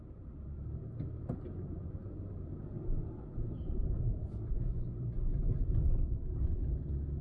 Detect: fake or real fake